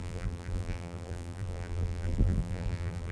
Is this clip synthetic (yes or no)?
yes